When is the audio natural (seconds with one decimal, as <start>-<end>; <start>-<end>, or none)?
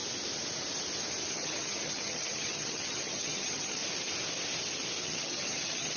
0.0-1.3; 3.8-5.0